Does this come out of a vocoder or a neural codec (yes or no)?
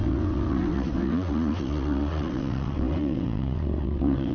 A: yes